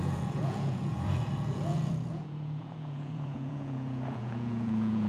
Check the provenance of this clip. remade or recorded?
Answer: remade